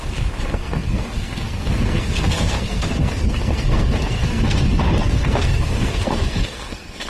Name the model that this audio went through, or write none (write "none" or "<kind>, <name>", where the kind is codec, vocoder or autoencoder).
codec, SNAC